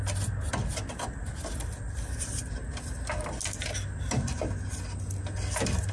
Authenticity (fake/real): real